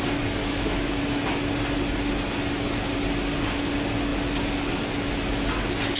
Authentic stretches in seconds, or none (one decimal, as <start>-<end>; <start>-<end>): 0.0-0.4; 1.0-6.0